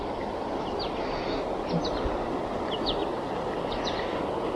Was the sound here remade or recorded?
recorded